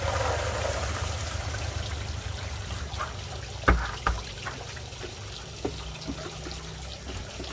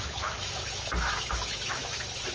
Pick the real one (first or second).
first